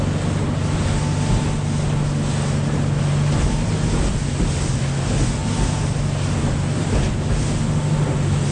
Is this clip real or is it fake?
real